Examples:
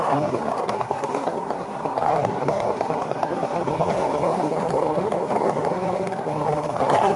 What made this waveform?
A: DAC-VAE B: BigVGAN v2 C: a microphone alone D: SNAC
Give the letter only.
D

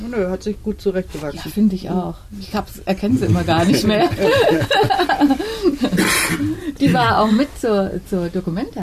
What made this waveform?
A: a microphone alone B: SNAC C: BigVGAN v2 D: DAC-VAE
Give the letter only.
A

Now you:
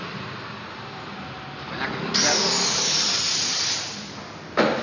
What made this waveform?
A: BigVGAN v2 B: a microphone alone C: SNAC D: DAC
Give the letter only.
B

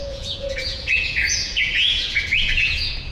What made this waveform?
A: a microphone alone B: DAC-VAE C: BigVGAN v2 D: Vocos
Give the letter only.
D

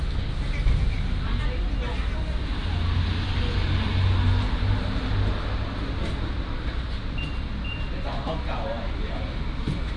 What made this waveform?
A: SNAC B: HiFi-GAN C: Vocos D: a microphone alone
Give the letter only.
D